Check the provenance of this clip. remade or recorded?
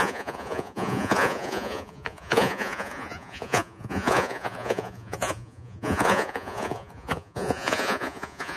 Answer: remade